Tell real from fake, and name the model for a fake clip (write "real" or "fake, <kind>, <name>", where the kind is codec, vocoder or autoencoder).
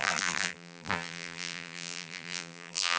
fake, vocoder, BigVGAN v2